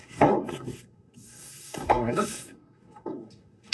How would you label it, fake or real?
fake